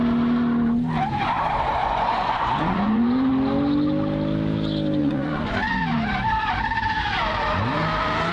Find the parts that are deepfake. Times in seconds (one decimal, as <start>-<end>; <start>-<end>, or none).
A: 1.8-3.3; 5.0-5.8